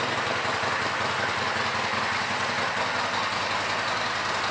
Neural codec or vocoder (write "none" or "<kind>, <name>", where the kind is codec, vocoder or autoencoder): none